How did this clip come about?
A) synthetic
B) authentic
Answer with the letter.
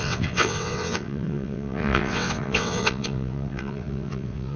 A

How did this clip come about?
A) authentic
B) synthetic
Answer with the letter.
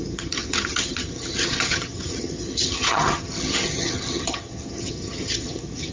B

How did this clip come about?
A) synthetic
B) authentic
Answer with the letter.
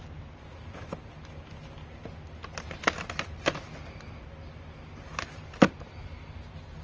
B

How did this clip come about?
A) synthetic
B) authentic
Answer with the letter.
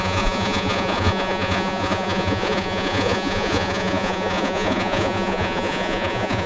A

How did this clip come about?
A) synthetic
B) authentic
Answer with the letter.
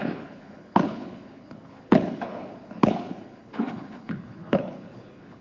A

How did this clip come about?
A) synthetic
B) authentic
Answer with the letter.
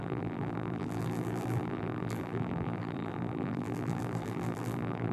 A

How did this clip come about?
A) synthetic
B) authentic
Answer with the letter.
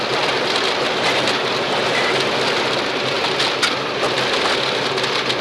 B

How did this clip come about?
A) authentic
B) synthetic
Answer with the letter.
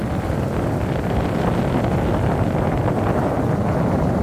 A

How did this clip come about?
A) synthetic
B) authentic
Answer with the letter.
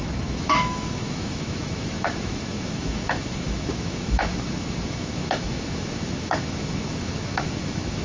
A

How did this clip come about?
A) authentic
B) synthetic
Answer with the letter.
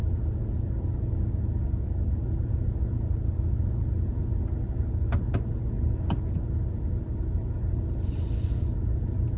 A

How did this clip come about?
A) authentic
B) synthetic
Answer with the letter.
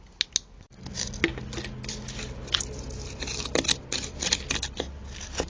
A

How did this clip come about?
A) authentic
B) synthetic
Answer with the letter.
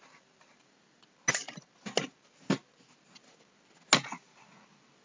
A